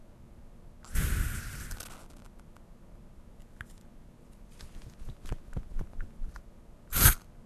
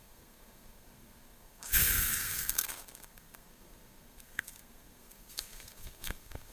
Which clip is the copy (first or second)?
second